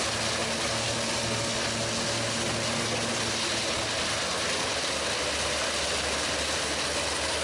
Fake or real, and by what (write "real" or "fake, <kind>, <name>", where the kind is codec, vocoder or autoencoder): real